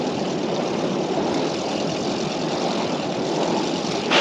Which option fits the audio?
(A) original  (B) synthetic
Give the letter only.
A